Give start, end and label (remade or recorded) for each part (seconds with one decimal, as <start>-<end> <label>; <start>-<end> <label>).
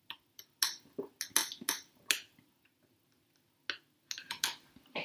0.0-5.0 recorded